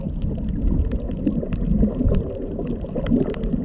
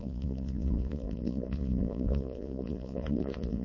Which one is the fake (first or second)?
second